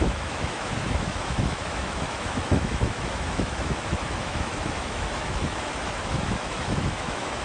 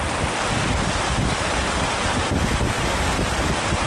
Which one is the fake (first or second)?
first